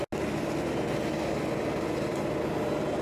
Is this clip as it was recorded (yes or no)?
yes